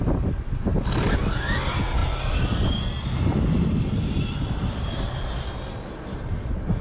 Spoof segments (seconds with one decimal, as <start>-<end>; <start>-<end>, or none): none